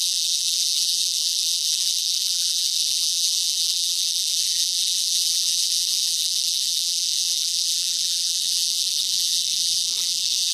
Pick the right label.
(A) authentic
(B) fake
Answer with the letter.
B